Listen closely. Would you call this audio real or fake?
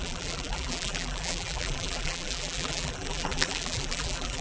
fake